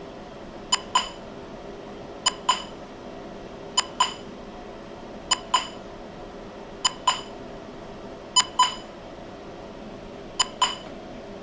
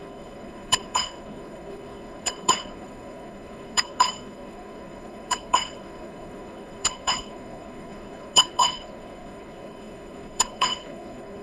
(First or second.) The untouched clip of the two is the first